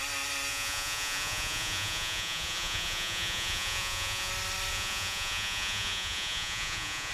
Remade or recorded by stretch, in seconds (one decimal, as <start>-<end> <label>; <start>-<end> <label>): 0.0-0.5 recorded; 0.5-4.3 remade; 4.3-4.7 recorded; 4.7-7.1 remade